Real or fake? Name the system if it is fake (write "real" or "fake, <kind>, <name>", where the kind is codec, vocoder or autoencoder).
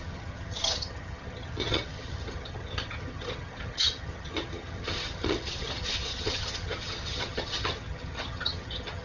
fake, vocoder, HiFi-GAN